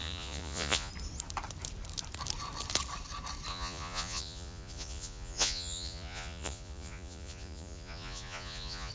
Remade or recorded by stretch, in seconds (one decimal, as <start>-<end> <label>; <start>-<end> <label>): 0.0-0.9 remade; 0.9-3.5 recorded; 3.5-8.9 remade